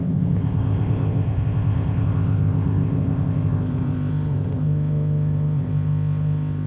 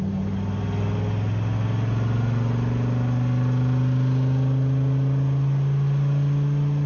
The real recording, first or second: second